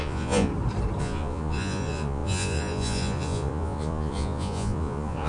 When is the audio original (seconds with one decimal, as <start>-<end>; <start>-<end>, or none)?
0.5-1.0